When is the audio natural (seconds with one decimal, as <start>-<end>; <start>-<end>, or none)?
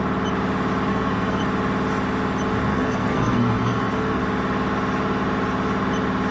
0.0-0.9; 1.4-2.7; 4.2-6.3